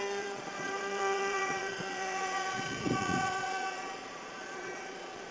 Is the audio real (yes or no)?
no